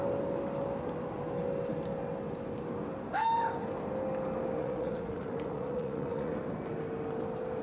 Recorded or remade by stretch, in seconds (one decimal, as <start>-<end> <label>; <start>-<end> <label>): 0.0-4.6 recorded; 4.6-6.3 remade; 6.3-7.6 recorded